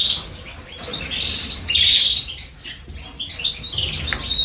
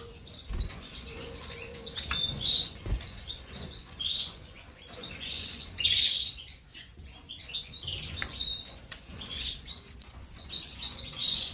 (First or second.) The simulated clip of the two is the second